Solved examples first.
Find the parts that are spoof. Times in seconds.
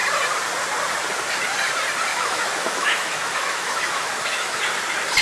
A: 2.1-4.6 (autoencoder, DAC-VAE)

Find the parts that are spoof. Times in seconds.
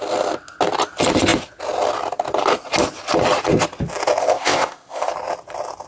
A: 4.2-5.1 (codec, ZipCodec)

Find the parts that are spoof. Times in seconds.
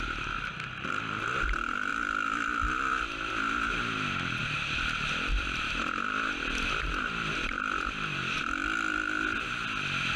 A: 1.9-3.3 (vocoder, BigVGAN v2); 4.4-8.2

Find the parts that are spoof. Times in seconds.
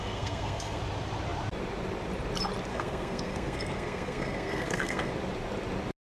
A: 0.0-0.8 (codec, SNAC); 2.7-5.1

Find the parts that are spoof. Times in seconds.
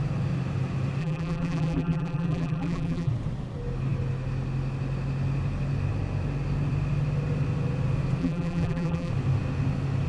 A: 1.0-3.1 (vocoder, BigVGAN v2); 8.2-9.1